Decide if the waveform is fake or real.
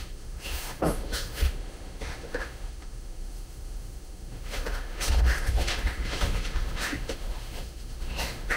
fake